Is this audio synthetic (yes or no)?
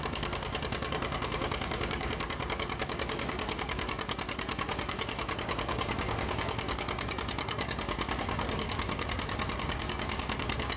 yes